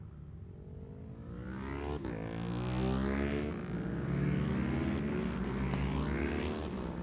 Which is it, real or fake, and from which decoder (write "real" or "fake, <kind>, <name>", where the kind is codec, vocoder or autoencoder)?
real